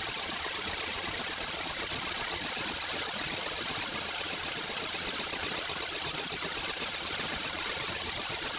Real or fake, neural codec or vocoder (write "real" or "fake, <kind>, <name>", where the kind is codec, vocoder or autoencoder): fake, vocoder, BigVGAN v2